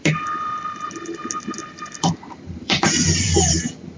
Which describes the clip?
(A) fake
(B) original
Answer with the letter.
A